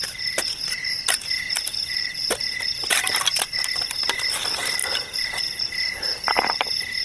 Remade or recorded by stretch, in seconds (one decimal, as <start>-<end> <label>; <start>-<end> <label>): 0.0-1.7 recorded; 1.7-2.5 remade; 2.5-4.8 recorded; 4.8-5.6 remade; 5.6-7.0 recorded